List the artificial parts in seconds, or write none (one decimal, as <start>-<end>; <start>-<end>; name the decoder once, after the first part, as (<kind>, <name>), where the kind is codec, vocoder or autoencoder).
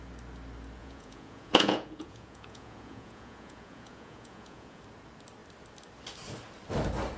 0.8-4.8 (vocoder, Vocos)